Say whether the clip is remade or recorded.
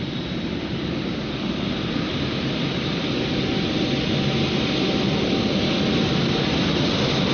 recorded